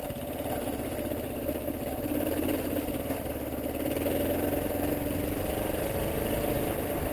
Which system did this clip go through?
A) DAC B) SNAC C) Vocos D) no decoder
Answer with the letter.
D